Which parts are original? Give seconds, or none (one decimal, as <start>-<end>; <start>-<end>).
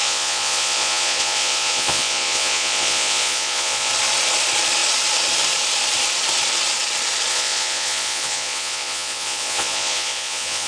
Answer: 3.9-7.3